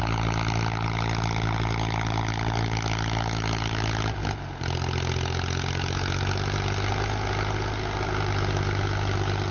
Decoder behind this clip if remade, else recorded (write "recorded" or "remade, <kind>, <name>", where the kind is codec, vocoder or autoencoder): recorded